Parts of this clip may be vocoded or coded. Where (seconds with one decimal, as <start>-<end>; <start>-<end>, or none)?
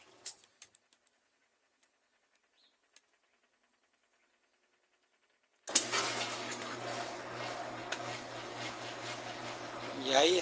none